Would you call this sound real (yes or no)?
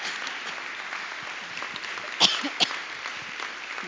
yes